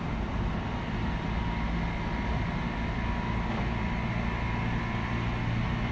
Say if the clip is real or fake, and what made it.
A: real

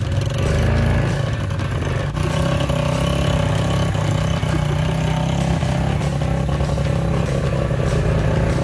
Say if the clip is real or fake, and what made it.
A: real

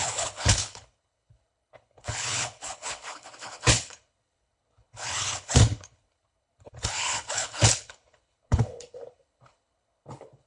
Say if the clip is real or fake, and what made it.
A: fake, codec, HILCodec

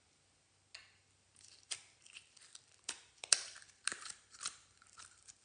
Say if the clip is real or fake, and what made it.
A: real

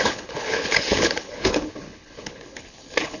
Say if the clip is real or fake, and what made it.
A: fake, codec, HILCodec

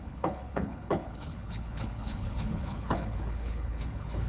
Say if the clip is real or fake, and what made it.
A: fake, codec, HILCodec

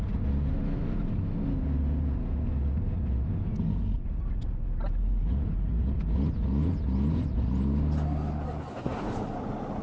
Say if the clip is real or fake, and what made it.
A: real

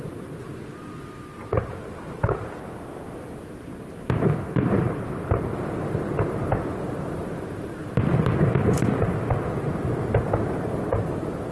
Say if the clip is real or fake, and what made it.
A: real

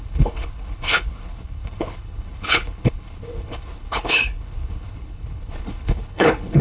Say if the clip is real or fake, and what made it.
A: fake, codec, HILCodec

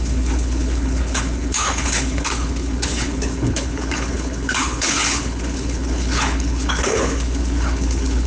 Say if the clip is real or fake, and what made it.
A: fake, codec, HILCodec